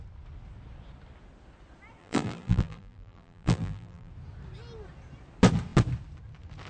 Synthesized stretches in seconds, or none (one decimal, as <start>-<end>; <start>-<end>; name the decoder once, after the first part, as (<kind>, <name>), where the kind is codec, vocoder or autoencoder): 2.0-4.1 (vocoder, BigVGAN v2)